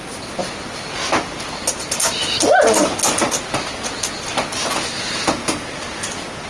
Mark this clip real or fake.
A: real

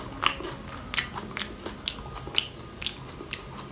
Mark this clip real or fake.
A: real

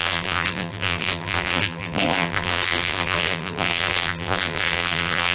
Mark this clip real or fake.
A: fake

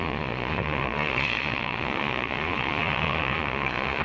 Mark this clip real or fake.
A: fake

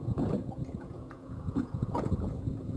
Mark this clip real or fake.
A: fake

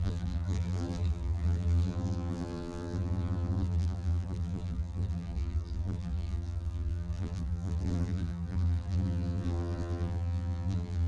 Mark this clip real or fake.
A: fake